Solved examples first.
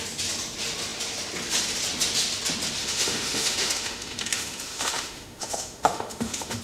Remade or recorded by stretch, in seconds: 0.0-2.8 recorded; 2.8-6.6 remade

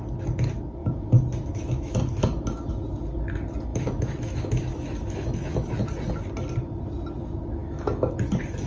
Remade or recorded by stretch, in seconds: 0.0-0.8 recorded; 0.8-2.7 remade; 2.7-3.7 recorded; 3.7-5.7 remade; 5.7-7.6 recorded; 7.6-8.1 remade; 8.1-8.7 recorded

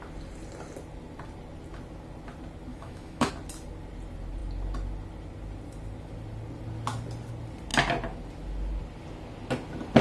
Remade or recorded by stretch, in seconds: 0.0-2.7 recorded; 2.7-3.3 remade; 3.3-10.0 recorded

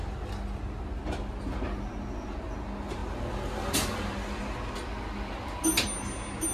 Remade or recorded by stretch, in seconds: 0.0-6.5 recorded

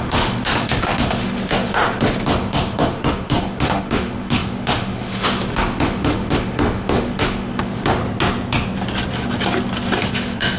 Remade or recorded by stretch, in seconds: 0.0-8.0 remade; 8.0-10.1 recorded; 10.1-10.6 remade

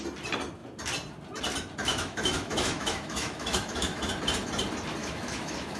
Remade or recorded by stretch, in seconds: 0.0-1.9 recorded; 1.9-4.1 remade; 4.1-5.0 recorded; 5.0-5.8 remade